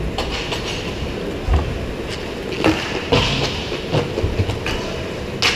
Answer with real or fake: real